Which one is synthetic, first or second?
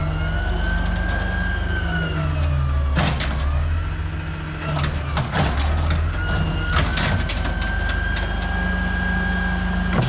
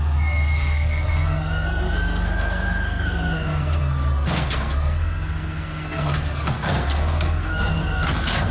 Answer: second